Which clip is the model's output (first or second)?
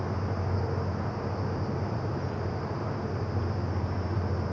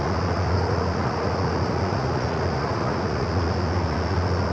second